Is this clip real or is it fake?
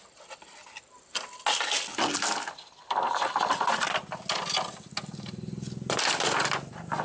real